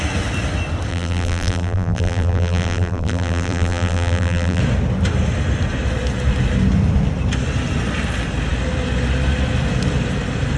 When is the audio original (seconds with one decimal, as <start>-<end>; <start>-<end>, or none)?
0.0-0.9; 4.6-10.6